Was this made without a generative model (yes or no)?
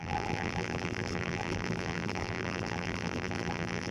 no